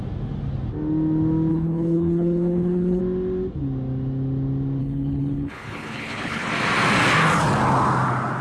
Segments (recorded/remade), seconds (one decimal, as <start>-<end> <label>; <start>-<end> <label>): 0.0-1.5 recorded; 1.5-3.0 remade; 3.0-4.8 recorded; 4.8-6.5 remade; 6.5-8.4 recorded